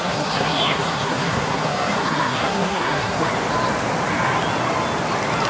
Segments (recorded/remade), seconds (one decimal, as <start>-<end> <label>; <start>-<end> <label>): 0.0-3.3 remade; 3.3-5.5 recorded